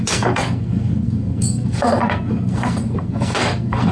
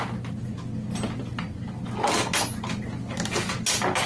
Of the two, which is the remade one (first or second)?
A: first